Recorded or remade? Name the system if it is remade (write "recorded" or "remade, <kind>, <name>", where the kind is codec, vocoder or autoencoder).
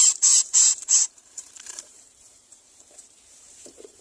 remade, vocoder, BigVGAN v2